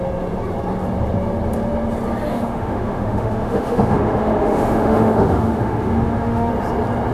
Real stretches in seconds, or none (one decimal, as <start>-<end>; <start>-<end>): 0.0-2.3; 6.5-7.1